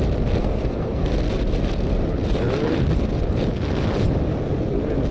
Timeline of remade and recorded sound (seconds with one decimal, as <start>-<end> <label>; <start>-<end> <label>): 0.0-0.4 recorded; 0.4-1.1 remade; 1.1-5.1 recorded